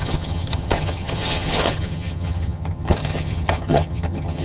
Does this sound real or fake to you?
fake